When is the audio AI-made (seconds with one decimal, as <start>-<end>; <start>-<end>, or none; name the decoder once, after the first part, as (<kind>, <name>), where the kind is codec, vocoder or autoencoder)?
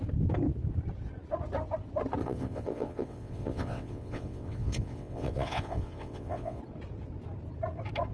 2.2-6.6 (vocoder, WaveNeXt)